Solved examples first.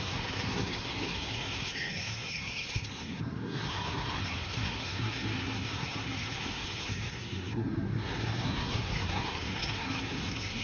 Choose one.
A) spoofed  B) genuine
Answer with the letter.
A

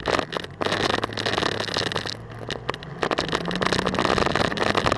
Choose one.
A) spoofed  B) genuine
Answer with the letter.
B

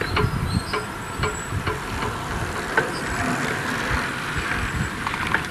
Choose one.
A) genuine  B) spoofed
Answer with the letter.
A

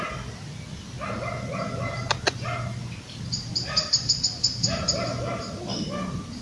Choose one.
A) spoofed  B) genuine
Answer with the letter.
B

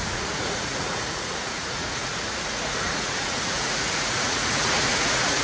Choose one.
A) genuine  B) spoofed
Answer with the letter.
B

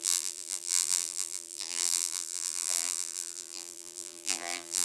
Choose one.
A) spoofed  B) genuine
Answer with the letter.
A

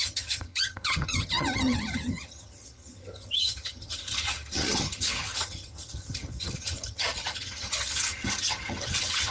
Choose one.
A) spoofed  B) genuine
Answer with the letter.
A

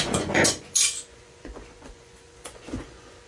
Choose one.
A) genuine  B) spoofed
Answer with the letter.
B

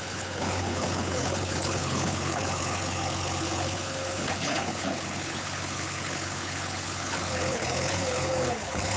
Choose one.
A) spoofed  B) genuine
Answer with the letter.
A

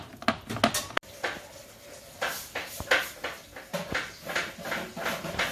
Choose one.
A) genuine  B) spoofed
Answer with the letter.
A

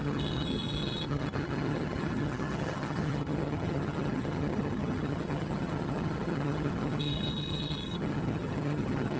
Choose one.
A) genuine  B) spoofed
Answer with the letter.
B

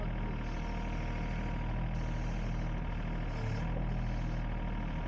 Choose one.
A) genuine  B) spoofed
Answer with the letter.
A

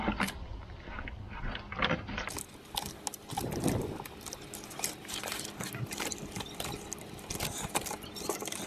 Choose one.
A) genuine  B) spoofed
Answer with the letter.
A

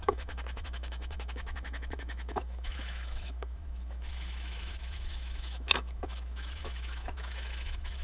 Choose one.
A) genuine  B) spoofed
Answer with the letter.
B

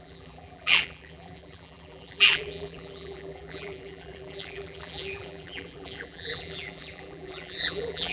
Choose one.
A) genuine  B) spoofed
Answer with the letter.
B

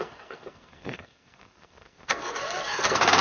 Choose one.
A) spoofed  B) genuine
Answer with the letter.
A